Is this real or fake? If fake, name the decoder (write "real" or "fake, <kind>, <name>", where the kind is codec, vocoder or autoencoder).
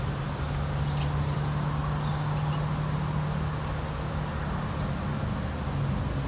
real